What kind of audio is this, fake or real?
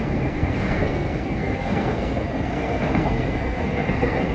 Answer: fake